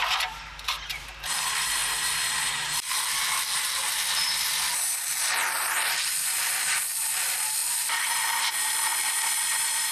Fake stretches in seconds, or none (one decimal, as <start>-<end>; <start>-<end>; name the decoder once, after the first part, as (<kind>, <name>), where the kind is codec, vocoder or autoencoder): 7.6-8.4 (vocoder, BigVGAN v2)